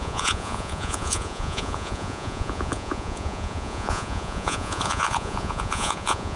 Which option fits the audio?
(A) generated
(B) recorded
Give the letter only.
A